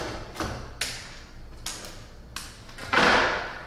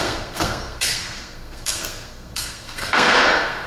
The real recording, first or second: first